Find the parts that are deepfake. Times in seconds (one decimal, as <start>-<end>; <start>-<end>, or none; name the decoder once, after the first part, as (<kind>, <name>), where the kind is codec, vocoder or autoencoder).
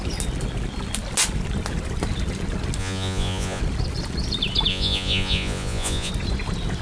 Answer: 2.8-3.6 (vocoder, Vocos); 4.7-6.1